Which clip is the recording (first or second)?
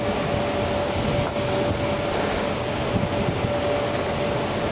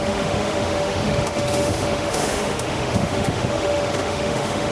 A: first